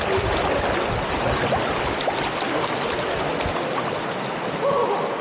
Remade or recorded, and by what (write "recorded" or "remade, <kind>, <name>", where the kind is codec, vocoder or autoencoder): recorded